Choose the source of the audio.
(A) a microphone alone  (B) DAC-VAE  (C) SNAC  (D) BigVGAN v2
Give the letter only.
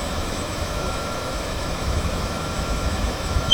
B